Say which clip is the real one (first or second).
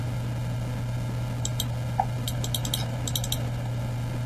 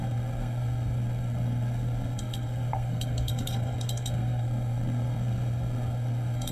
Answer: first